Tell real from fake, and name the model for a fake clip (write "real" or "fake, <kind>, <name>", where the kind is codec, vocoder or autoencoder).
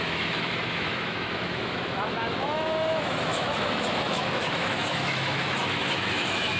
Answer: fake, autoencoder, DAC-VAE